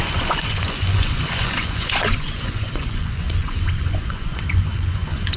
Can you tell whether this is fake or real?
fake